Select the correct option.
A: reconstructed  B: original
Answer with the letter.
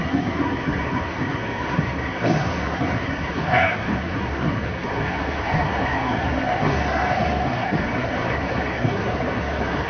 A